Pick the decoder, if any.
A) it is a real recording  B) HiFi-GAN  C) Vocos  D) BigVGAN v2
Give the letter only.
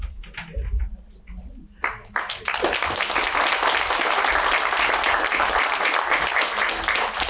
A